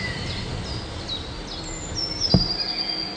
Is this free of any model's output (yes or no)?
yes